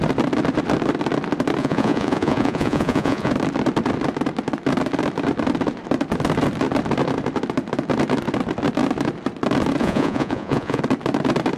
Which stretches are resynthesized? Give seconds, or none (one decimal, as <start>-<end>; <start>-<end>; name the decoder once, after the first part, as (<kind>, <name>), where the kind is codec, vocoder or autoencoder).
1.6-3.3 (vocoder, Vocos); 9.8-10.8